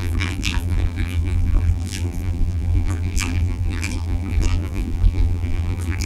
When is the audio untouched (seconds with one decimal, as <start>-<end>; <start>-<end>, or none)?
none

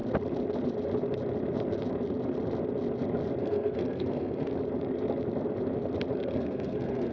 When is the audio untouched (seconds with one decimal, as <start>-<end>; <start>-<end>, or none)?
0.0-3.4; 4.5-6.2

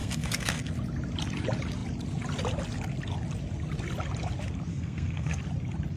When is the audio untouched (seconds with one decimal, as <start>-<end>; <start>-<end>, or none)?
0.7-4.7; 5.4-6.0

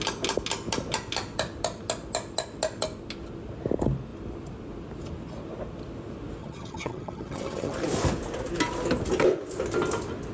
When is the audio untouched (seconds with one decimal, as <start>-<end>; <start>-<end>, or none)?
0.0-6.4; 7.7-10.3

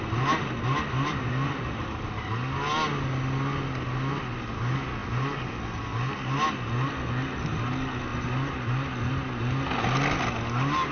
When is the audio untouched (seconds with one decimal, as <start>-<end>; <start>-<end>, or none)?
0.0-10.9

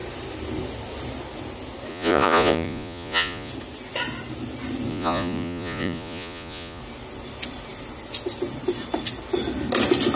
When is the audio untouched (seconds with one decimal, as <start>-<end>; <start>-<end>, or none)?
0.0-1.9; 3.5-4.9; 6.8-10.2

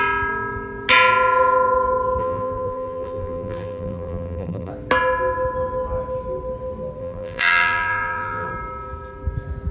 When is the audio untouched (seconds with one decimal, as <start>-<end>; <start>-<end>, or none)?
0.0-2.2; 4.7-7.0; 8.5-9.7